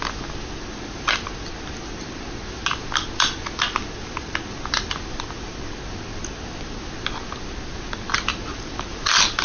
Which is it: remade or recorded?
recorded